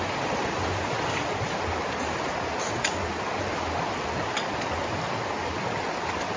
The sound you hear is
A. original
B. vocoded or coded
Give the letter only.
A